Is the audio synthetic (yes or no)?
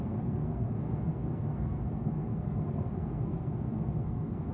yes